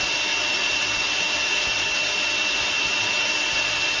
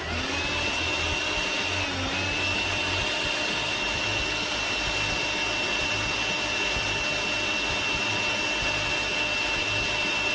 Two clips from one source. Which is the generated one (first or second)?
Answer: first